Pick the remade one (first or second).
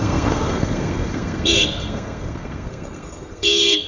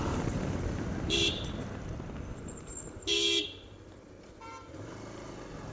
first